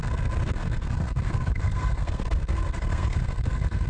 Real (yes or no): no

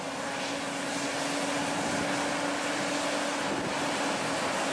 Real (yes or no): yes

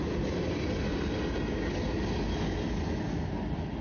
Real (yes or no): yes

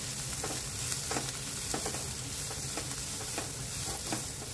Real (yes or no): yes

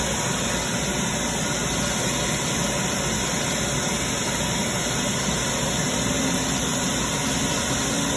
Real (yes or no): yes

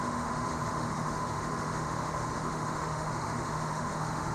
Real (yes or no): no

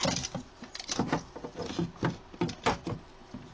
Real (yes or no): yes